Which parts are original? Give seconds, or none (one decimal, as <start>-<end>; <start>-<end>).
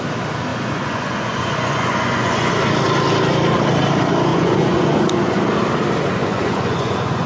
0.0-0.5; 2.5-4.3; 5.4-6.2